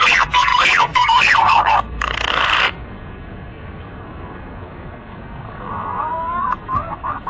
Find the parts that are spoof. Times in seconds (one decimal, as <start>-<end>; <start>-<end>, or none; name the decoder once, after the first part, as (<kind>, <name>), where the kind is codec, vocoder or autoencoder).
0.0-7.3 (codec, SNAC)